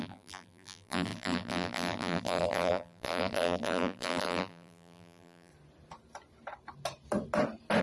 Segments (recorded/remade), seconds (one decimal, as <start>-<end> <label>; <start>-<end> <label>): 0.0-5.5 remade; 5.5-7.8 recorded